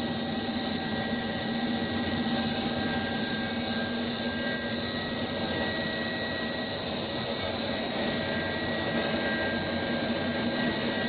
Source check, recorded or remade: recorded